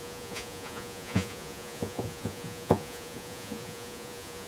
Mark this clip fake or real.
fake